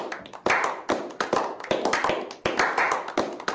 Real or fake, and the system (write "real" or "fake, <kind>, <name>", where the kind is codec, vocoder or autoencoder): real